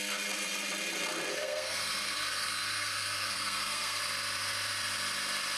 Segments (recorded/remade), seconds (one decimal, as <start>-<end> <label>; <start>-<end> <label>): 0.0-1.3 recorded; 1.3-4.0 remade; 4.0-5.6 recorded